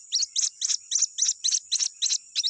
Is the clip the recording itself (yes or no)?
yes